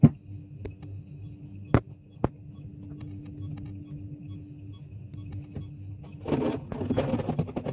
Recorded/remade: recorded